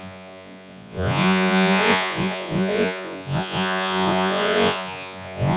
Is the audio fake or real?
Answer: fake